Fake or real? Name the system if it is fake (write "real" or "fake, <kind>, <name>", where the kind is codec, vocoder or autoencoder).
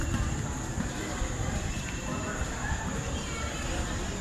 real